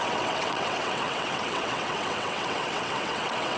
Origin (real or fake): fake